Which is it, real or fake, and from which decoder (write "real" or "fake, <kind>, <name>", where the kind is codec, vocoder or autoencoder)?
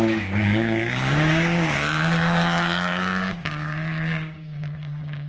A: fake, codec, DAC